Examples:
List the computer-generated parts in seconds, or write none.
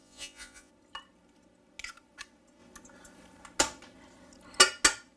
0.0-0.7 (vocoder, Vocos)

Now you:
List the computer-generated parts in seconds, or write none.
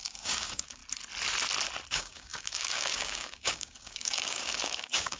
0.0-0.8 (codec, DAC); 1.9-5.2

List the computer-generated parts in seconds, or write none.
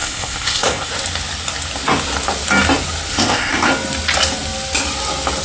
0.0-0.9 (codec, ZipCodec); 3.1-3.7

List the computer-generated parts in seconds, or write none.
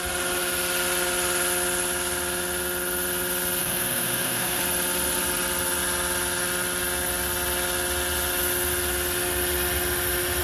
3.6-4.6 (autoencoder, DAC-VAE)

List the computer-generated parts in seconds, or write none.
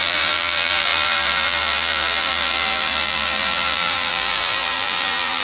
0.0-5.4 (vocoder, BigVGAN v2)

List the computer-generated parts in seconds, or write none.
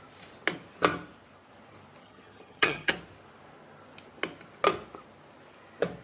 2.0-2.9 (vocoder, HiFi-GAN)